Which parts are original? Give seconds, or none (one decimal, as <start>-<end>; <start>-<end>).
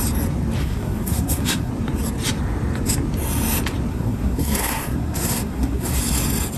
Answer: 0.0-0.6; 1.7-3.9; 6.0-6.6